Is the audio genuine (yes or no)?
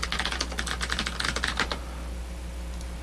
yes